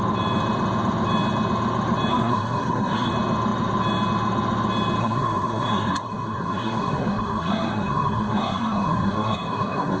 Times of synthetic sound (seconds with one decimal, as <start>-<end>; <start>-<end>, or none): 2.1-3.1; 5.0-10.0